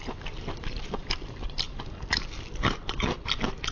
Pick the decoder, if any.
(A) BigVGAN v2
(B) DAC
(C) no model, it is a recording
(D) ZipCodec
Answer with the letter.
C